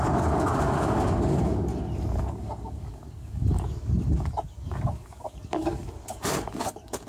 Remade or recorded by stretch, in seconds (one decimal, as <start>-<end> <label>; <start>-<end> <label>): 0.0-1.7 remade; 1.7-2.3 recorded; 2.3-7.1 remade